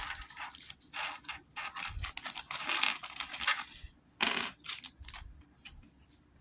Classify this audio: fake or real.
real